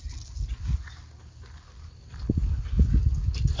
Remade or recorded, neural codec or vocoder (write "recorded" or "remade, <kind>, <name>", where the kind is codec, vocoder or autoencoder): recorded